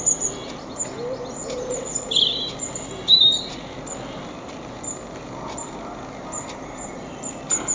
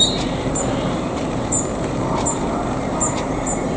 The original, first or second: first